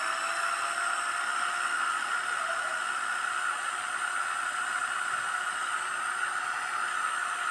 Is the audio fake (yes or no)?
no